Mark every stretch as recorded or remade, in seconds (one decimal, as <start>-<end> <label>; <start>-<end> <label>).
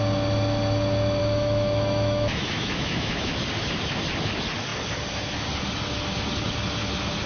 0.0-1.2 recorded; 1.2-3.3 remade; 3.3-7.3 recorded